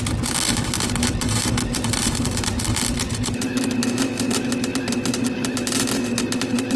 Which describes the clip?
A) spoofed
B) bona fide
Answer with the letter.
B